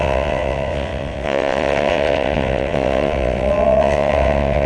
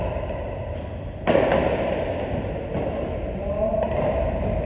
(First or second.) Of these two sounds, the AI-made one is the first